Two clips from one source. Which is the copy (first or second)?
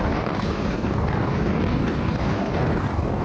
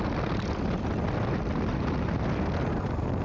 first